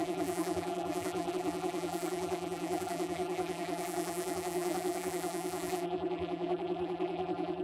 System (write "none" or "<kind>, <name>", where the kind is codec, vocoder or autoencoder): vocoder, BigVGAN v2